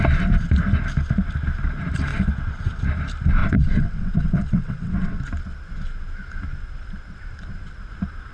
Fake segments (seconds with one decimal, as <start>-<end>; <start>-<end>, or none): 2.1-2.8; 3.4-5.2